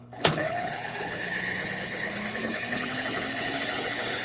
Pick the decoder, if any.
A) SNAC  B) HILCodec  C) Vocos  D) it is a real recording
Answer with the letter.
B